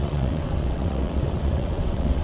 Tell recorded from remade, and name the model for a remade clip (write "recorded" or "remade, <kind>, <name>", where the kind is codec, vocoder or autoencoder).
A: remade, vocoder, WaveNeXt